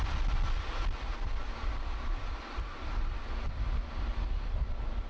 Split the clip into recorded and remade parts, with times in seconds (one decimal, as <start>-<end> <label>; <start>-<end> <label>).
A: 0.0-5.1 recorded